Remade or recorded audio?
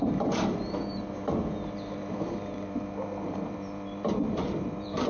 remade